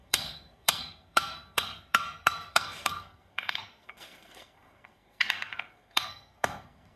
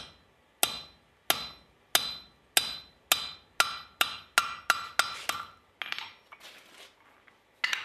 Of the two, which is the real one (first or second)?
second